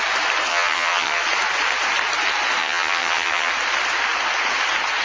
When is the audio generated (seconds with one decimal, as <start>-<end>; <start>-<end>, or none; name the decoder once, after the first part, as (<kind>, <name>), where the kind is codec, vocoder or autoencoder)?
0.5-1.2 (vocoder, HiFi-GAN); 2.6-3.5